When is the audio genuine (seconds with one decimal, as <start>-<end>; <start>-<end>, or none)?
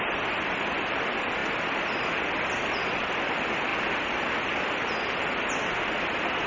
0.0-1.4; 3.2-6.5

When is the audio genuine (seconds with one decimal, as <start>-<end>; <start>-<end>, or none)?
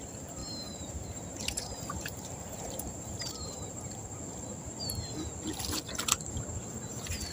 0.0-0.4; 4.2-7.3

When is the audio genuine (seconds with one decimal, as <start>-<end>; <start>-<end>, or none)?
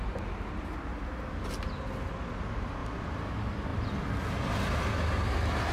0.0-2.8; 3.3-5.7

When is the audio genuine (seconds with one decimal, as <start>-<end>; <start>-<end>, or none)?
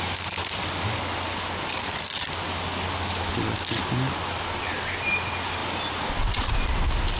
3.3-4.2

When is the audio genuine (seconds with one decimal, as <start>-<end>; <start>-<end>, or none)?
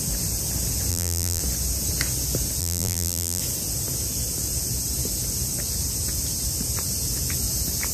0.0-0.9; 1.4-2.6; 3.4-7.9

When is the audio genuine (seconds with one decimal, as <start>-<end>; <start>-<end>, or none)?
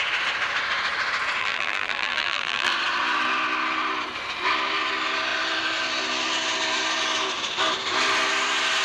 0.0-1.4; 2.7-8.8